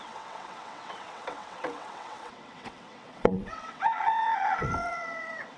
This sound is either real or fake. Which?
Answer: fake